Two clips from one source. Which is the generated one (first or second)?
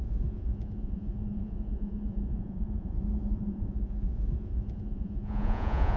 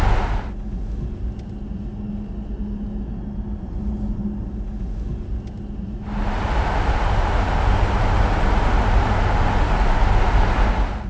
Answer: first